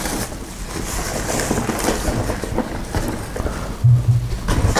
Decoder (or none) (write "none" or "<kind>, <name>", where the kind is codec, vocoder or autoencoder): none